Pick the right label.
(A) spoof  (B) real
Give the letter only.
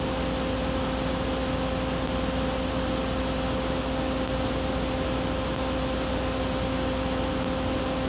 B